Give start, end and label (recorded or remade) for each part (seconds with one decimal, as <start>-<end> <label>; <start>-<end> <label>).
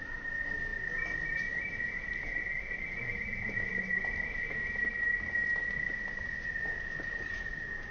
0.0-7.9 recorded